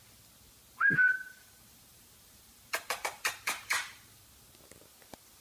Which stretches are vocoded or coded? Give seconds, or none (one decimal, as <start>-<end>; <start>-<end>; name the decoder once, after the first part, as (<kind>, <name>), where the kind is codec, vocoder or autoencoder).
1.0-4.2 (vocoder, BigVGAN v2)